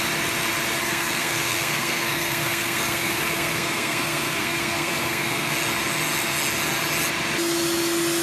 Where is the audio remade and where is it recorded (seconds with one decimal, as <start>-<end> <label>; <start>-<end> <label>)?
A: 0.0-0.8 recorded; 0.8-5.5 remade; 5.5-8.2 recorded